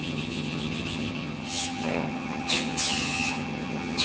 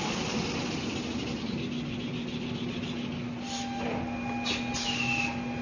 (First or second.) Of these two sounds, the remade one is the first